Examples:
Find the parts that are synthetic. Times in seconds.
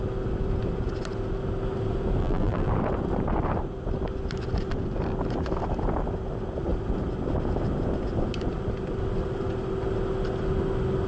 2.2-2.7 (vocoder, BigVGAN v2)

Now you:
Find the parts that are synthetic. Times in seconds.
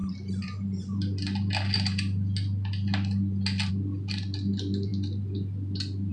none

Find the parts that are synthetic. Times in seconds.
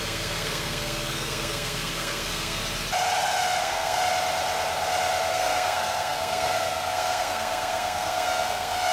0.0-2.6 (codec, SNAC); 3.6-4.0; 5.3-8.9